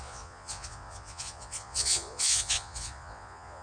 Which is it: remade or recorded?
remade